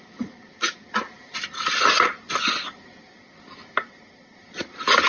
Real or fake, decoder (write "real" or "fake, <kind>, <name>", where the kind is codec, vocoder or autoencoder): real